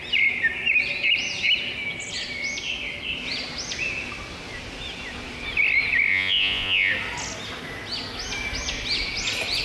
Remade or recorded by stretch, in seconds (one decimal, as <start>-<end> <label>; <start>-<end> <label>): 0.0-6.1 recorded; 6.1-6.9 remade; 6.9-9.6 recorded